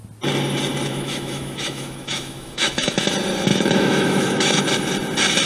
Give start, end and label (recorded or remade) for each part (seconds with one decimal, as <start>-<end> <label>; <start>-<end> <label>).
0.0-0.9 recorded; 0.9-3.0 remade; 3.0-3.5 recorded; 3.5-4.6 remade; 4.6-5.5 recorded